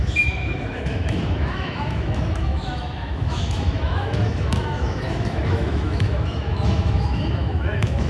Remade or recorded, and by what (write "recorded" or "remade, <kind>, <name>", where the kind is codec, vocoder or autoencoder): remade, autoencoder, DAC-VAE